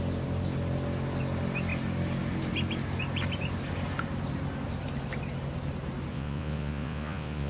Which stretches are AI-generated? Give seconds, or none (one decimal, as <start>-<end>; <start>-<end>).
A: 6.1-7.5